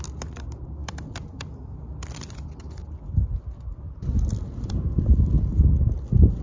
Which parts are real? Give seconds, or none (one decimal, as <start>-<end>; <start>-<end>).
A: 0.0-6.4